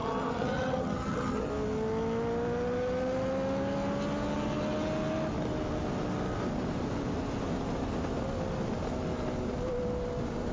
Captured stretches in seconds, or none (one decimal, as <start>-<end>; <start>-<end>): 1.5-10.5